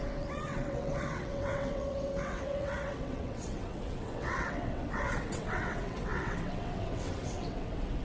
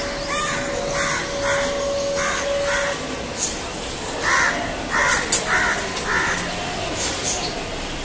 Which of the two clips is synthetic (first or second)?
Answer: first